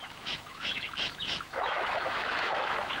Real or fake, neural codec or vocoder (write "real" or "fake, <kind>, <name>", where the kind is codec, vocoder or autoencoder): fake, autoencoder, DAC-VAE